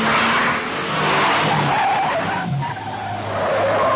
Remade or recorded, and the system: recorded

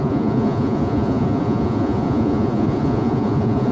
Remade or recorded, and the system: remade, vocoder, Vocos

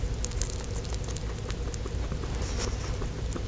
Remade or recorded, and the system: recorded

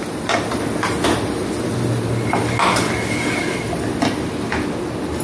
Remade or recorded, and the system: recorded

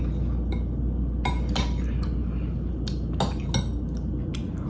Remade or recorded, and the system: recorded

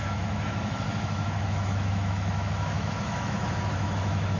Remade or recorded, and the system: remade, autoencoder, DAC-VAE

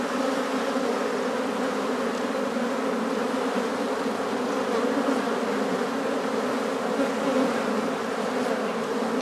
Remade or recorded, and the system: recorded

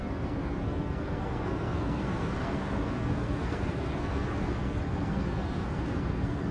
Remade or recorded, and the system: remade, codec, SNAC